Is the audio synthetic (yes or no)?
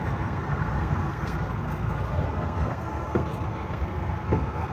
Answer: yes